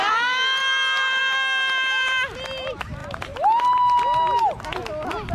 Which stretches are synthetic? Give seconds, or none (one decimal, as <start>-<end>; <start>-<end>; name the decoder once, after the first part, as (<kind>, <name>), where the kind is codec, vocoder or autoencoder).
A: none